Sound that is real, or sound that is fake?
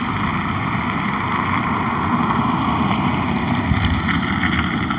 real